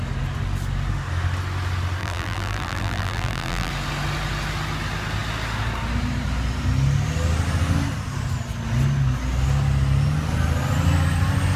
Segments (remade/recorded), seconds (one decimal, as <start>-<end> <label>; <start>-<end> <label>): 0.0-2.0 recorded; 2.0-3.7 remade; 3.7-11.6 recorded